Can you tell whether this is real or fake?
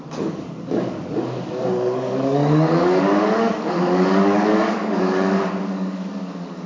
fake